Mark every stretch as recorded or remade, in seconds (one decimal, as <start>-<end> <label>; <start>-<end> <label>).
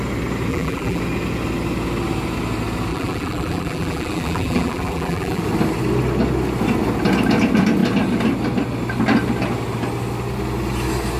0.0-0.5 recorded; 0.5-1.0 remade; 1.0-2.9 recorded; 2.9-5.4 remade; 5.4-11.2 recorded